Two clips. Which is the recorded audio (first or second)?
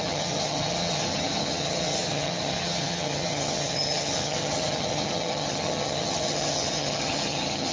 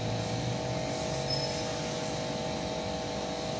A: second